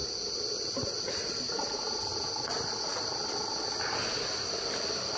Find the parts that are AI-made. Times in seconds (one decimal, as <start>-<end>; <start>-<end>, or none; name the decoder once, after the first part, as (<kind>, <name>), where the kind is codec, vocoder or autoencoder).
1.3-2.1 (vocoder, BigVGAN v2)